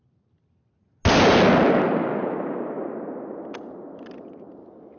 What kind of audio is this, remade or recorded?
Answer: recorded